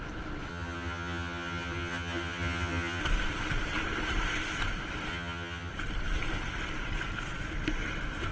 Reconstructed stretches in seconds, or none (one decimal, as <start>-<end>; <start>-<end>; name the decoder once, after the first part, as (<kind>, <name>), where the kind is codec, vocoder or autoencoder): 0.5-3.0 (vocoder, HiFi-GAN); 5.1-5.7